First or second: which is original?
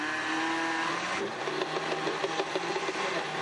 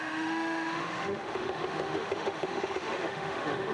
first